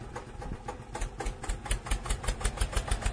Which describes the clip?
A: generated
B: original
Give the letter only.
B